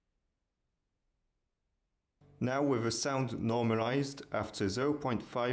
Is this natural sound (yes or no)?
no